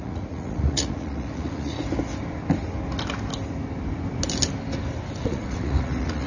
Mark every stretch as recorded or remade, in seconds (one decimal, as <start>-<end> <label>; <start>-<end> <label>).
0.0-1.8 remade; 1.8-5.2 recorded; 5.2-6.3 remade